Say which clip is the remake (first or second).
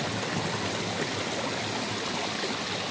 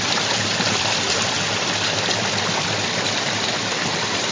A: second